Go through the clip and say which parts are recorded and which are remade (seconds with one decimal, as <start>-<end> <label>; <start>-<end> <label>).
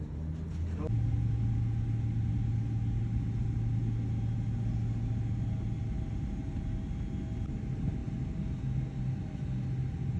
0.0-10.2 recorded